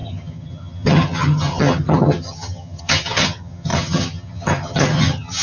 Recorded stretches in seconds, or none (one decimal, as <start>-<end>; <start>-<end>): none